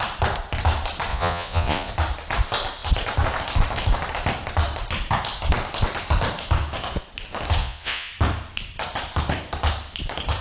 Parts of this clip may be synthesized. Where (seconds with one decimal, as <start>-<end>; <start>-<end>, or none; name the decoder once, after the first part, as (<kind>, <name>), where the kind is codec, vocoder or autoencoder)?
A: 1.1-1.9 (vocoder, Vocos); 7.6-8.1